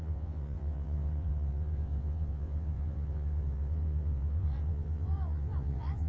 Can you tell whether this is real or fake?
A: fake